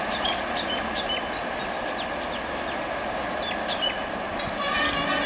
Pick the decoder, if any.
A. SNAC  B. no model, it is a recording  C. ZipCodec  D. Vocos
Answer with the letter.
B